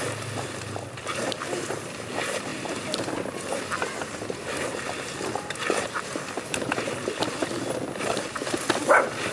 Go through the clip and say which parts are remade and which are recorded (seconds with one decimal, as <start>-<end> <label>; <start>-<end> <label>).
0.0-2.5 recorded; 2.5-3.1 remade; 3.1-9.3 recorded